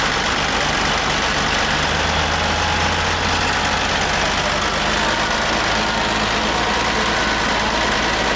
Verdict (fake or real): real